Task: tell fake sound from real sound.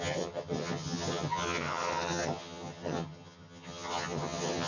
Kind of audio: fake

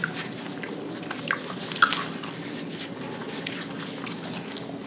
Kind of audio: real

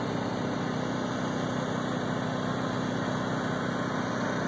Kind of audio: real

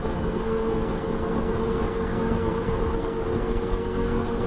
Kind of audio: fake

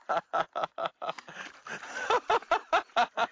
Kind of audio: real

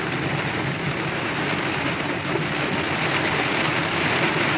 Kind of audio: real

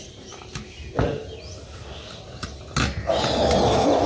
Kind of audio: real